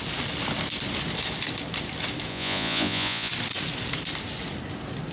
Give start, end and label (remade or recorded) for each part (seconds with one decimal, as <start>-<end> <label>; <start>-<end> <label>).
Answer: 0.0-2.3 recorded; 2.3-3.3 remade; 3.3-5.1 recorded